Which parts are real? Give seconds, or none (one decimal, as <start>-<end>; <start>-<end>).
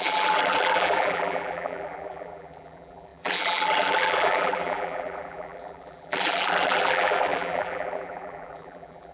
none